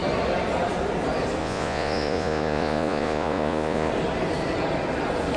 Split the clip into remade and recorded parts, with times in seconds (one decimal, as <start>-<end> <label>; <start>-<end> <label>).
0.0-1.4 recorded; 1.4-3.9 remade; 3.9-5.4 recorded